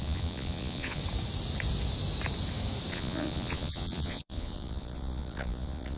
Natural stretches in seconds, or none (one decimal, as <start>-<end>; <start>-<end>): 1.0-2.9